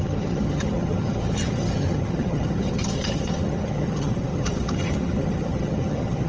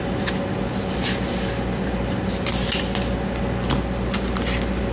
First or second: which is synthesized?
first